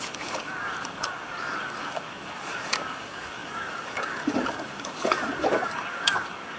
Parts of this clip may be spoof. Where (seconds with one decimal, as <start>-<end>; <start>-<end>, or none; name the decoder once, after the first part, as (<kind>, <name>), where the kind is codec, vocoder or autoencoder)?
0.0-6.6 (codec, DAC)

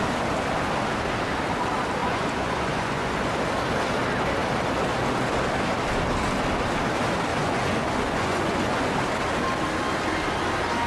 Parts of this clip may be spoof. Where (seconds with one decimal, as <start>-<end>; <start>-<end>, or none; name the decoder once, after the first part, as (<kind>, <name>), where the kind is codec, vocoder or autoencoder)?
2.0-3.3 (vocoder, Vocos); 7.3-8.9

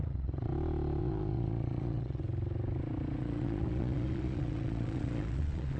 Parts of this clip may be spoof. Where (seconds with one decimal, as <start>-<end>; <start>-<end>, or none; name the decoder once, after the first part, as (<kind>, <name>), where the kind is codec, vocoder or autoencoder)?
0.0-0.5 (vocoder, Vocos); 1.0-2.2; 3.2-5.8

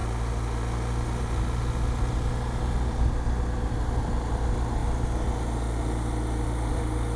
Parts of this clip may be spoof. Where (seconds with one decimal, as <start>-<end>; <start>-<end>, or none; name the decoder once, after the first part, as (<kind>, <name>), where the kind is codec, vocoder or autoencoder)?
none